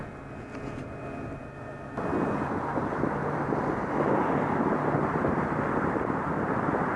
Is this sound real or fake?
real